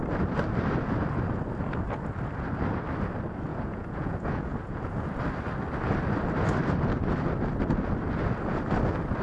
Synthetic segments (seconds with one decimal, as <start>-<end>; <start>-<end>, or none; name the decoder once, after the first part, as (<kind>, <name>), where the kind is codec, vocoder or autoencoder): 3.5-5.1 (vocoder, Vocos)